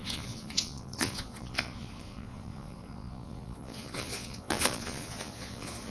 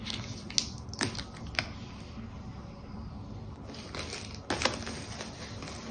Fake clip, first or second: first